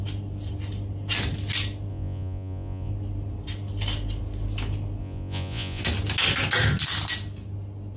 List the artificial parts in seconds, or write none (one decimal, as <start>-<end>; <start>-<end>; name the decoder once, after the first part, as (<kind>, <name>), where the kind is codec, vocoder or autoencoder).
1.9-2.9 (vocoder, Vocos); 5.0-5.8